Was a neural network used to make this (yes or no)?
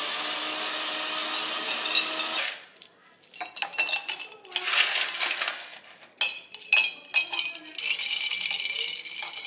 no